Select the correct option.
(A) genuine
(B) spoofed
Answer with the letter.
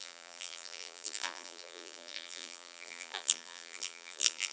B